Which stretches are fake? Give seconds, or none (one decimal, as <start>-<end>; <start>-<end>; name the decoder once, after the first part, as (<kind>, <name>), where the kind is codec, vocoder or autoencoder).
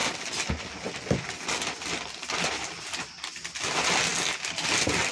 none